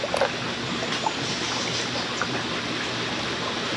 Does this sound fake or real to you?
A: real